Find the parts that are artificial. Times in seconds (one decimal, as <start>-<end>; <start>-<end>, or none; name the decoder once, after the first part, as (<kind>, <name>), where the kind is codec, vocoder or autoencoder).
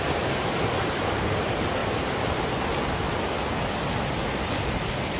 none